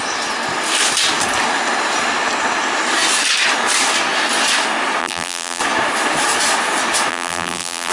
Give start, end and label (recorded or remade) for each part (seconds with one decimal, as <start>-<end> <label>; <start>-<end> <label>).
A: 0.0-5.0 recorded; 5.0-5.6 remade; 5.6-7.1 recorded; 7.1-7.9 remade